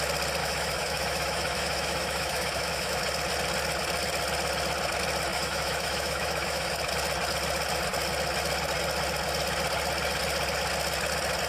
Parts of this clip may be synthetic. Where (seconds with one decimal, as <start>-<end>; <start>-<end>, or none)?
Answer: 0.4-3.0; 5.3-6.8